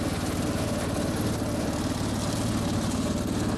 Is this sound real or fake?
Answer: real